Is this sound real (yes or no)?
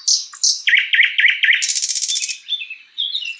yes